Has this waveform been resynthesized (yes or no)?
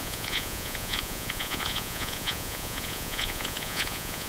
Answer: yes